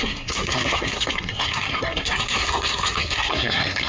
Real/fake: fake